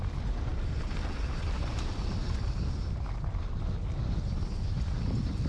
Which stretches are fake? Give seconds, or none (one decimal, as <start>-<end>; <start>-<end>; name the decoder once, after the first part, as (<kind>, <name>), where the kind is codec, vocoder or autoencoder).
none